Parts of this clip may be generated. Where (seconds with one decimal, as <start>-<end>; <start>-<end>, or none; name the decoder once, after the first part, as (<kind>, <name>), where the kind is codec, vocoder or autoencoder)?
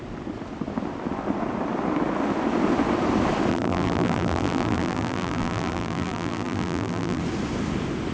3.5-7.2 (vocoder, BigVGAN v2)